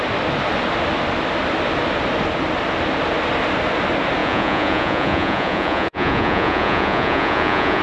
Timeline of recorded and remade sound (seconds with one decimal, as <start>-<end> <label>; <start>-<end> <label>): 0.0-4.2 recorded; 4.2-7.8 remade